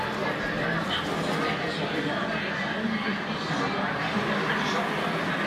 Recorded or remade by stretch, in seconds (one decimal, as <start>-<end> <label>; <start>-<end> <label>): 0.0-1.6 recorded; 1.6-2.4 remade; 2.4-5.5 recorded

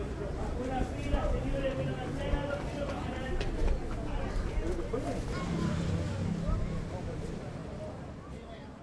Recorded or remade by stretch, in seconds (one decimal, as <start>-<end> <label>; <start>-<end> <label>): 0.0-8.8 recorded

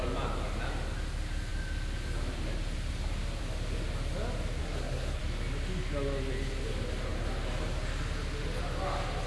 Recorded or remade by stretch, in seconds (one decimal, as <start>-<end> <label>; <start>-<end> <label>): 0.0-4.6 recorded; 4.6-5.2 remade; 5.2-9.3 recorded

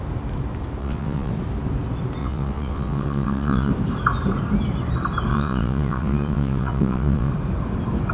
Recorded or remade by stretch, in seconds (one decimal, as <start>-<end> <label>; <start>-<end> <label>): 0.0-0.8 recorded; 0.8-1.3 remade; 1.3-2.2 recorded; 2.2-3.7 remade; 3.7-5.3 recorded; 5.3-7.3 remade; 7.3-8.1 recorded

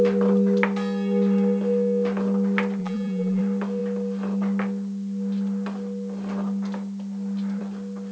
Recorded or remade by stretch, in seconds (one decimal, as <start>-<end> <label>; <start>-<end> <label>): 0.0-2.8 recorded; 2.8-3.4 remade; 3.4-8.1 recorded

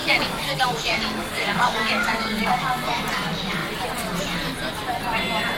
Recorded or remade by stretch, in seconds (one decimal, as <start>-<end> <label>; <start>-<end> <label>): 0.0-2.6 remade; 2.6-5.6 recorded

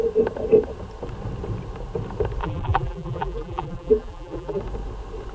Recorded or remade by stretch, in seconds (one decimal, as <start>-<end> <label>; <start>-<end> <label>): 0.0-2.4 recorded; 2.4-4.6 remade; 4.6-5.3 recorded